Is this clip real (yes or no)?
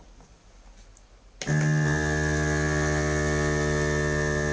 yes